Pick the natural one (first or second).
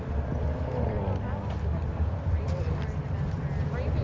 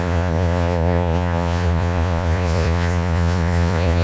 first